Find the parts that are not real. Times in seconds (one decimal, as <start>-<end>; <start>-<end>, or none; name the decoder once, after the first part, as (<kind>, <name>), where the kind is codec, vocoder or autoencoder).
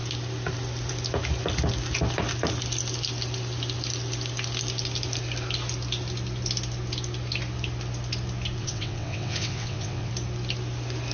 8.6-10.1 (vocoder, WaveNeXt)